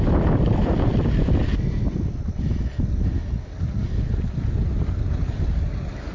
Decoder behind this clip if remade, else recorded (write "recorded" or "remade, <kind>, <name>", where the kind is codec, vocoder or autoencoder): recorded